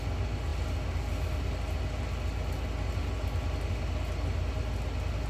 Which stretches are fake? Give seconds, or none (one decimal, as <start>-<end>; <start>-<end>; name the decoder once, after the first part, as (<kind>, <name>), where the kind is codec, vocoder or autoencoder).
none